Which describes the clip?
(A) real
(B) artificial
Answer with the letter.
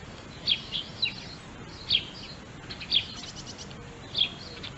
A